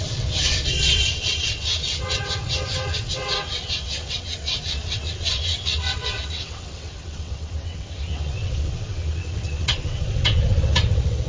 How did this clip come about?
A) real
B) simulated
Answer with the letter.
B